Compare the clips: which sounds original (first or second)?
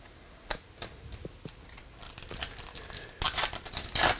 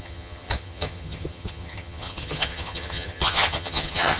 first